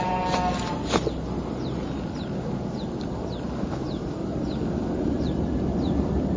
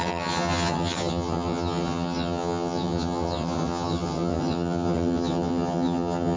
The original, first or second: first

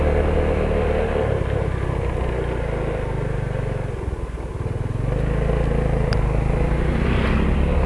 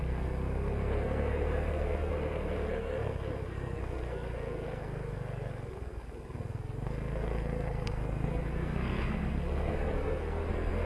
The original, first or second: first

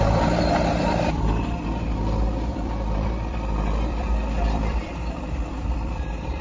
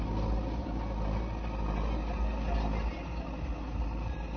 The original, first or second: second